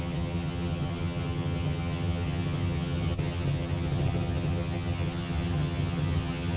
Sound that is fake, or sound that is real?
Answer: fake